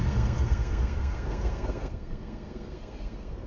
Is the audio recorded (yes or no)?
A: no